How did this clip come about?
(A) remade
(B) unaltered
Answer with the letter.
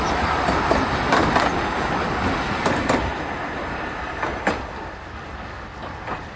B